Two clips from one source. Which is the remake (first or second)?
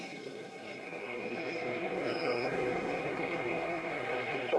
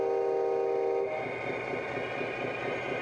first